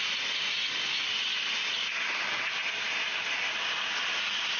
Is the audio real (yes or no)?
yes